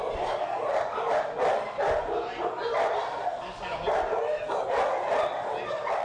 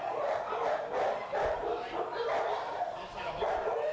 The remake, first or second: second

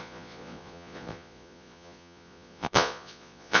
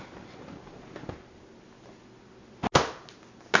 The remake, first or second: first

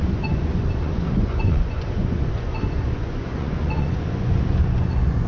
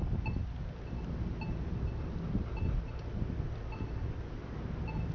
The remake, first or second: first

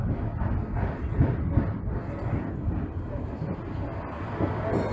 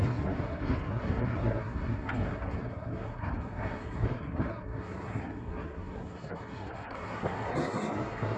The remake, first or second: second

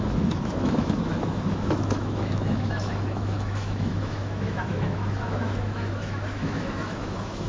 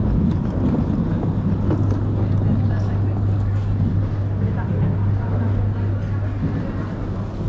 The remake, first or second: first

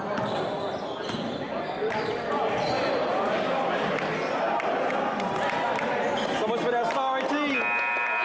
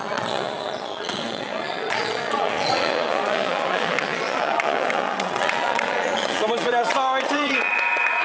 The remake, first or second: second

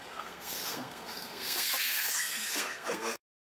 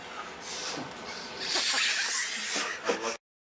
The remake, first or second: first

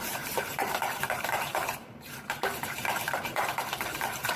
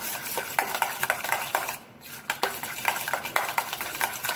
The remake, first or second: first